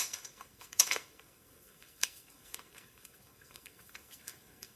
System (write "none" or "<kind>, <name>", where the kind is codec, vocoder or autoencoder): codec, SNAC